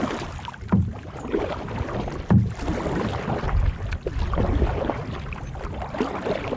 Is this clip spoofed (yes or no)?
no